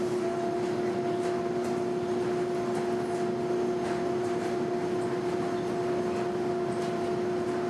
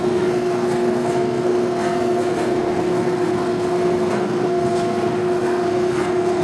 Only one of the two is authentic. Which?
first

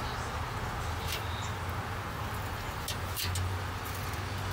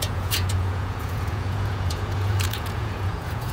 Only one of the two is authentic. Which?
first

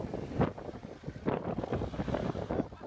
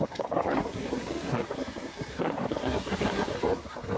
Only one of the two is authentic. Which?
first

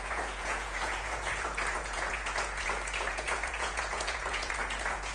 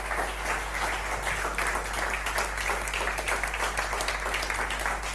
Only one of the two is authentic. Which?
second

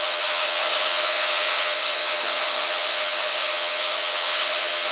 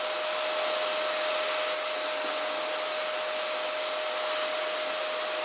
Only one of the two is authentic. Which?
second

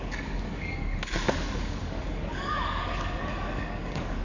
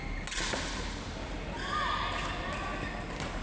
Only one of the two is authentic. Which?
second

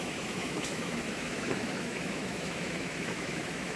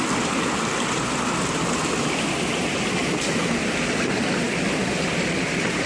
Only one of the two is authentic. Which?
second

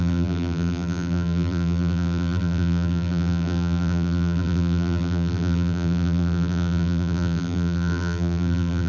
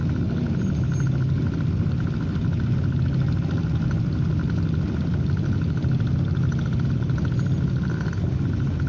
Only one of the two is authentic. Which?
second